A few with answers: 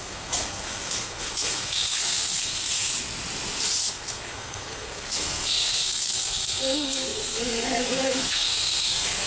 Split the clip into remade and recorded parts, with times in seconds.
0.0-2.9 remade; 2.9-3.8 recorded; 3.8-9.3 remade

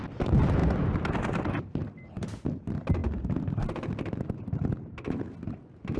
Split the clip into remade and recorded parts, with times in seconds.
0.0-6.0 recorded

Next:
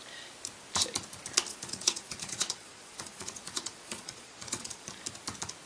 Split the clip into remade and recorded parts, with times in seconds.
0.0-1.5 recorded; 1.5-4.9 remade; 4.9-5.7 recorded

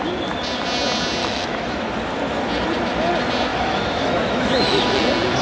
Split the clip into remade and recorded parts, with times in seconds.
0.0-1.2 recorded; 1.2-1.9 remade; 1.9-3.5 recorded; 3.5-5.0 remade; 5.0-5.4 recorded

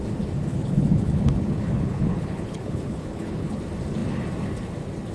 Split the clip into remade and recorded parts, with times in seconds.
0.0-0.5 recorded; 0.5-3.6 remade; 3.6-5.1 recorded

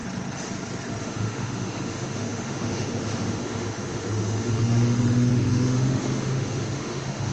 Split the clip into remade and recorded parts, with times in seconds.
0.0-1.0 recorded; 1.0-7.3 remade